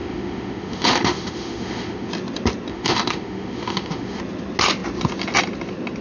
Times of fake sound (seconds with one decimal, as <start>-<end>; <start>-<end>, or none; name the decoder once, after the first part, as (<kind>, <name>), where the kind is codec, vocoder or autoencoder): 0.0-2.1 (autoencoder, DAC-VAE); 2.7-4.2